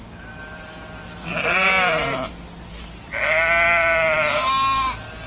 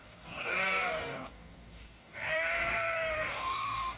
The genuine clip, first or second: first